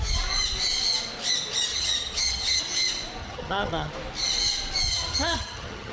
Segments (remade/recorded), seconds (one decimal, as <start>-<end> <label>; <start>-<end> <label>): 0.0-1.7 recorded; 1.7-2.6 remade; 2.6-3.2 recorded; 3.2-3.9 remade; 3.9-4.9 recorded; 4.9-5.9 remade